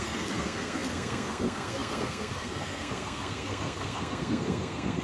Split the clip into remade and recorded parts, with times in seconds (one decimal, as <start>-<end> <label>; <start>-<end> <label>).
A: 0.0-5.0 remade